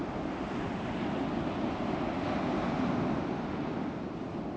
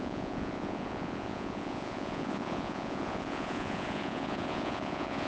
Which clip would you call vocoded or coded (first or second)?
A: second